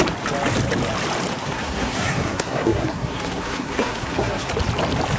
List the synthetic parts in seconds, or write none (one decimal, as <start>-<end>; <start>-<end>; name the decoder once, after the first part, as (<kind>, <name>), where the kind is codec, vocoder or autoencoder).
1.4-4.5 (codec, SNAC)